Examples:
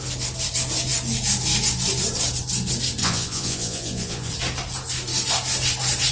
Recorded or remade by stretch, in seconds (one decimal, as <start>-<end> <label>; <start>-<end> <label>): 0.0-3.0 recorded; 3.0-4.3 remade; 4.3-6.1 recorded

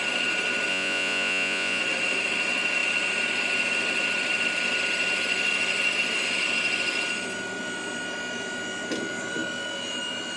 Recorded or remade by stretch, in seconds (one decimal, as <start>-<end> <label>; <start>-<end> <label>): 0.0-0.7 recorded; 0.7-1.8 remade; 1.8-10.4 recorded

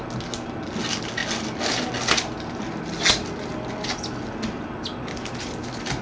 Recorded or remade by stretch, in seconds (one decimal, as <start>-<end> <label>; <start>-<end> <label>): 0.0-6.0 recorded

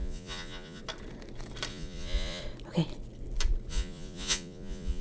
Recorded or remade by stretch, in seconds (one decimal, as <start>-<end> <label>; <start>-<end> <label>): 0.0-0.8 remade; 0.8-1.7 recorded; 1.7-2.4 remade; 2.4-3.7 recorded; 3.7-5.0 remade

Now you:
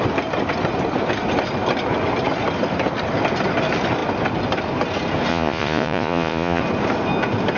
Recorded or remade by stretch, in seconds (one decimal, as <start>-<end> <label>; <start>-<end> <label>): 0.0-5.3 recorded; 5.3-6.6 remade; 6.6-7.6 recorded

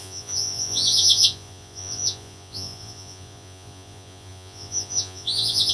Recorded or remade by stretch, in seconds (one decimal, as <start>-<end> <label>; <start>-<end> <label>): 0.0-5.7 remade

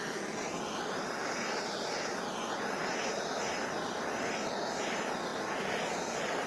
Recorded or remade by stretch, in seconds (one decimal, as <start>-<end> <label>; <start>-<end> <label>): 0.0-6.5 recorded